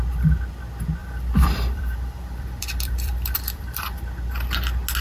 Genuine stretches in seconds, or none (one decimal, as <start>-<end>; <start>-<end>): 0.0-1.0; 4.0-5.0